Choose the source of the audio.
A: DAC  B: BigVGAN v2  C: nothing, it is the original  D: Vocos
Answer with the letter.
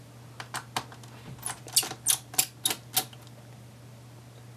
C